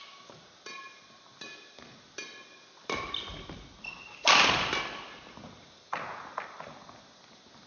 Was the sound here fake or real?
real